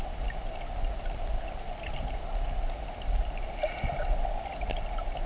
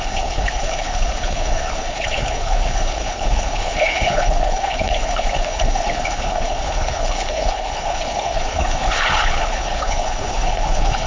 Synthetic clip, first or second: second